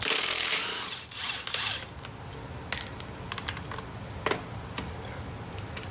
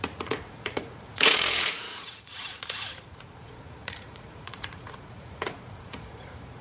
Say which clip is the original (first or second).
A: first